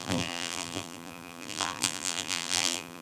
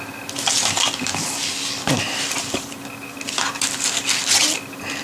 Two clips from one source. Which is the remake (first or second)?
first